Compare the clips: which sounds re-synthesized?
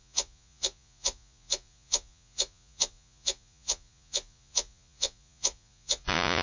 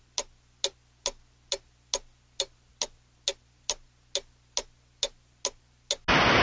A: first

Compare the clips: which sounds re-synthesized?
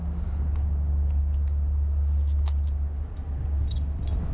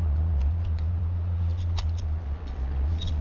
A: second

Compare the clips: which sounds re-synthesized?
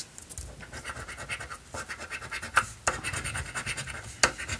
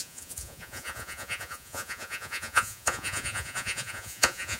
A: second